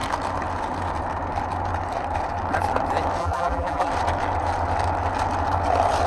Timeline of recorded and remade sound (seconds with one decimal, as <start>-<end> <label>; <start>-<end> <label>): 0.0-3.2 recorded; 3.2-3.9 remade; 3.9-6.1 recorded